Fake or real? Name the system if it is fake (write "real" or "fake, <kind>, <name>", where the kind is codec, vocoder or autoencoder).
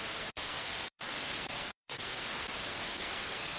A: fake, codec, SNAC